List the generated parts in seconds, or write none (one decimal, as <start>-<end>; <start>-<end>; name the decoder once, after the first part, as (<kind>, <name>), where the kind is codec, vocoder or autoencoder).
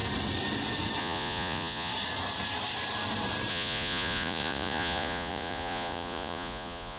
1.0-1.9 (vocoder, Vocos); 3.5-7.0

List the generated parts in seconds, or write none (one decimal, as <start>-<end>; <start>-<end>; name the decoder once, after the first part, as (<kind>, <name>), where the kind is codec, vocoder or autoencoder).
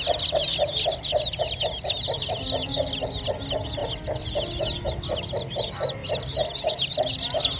none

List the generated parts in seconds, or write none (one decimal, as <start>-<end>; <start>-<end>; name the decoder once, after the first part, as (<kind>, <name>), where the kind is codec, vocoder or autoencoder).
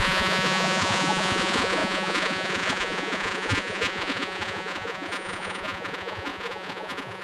0.0-7.2 (vocoder, Vocos)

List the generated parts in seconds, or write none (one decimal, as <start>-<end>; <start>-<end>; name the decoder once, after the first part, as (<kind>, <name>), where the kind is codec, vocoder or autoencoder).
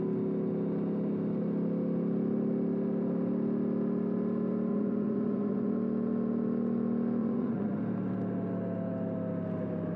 4.7-5.7 (vocoder, Vocos); 7.2-7.8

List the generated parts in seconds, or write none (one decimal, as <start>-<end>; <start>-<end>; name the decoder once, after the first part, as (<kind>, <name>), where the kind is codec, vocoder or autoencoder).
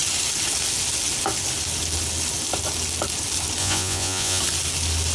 3.6-4.4 (vocoder, Vocos)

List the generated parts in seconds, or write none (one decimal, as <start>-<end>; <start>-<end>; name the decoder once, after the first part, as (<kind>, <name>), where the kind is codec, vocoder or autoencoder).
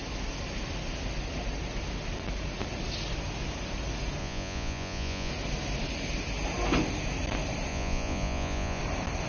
4.2-5.3 (vocoder, Vocos); 7.7-8.8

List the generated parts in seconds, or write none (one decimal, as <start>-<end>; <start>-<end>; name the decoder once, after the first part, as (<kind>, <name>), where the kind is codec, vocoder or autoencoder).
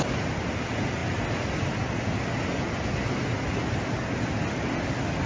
none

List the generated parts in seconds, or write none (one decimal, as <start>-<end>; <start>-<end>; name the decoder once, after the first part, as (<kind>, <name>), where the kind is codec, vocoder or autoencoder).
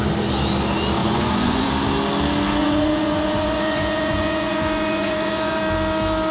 1.0-1.7 (vocoder, Vocos); 2.6-5.6